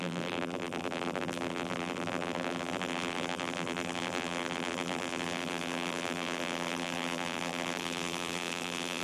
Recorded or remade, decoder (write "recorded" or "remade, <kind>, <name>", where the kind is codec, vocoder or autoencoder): remade, vocoder, BigVGAN v2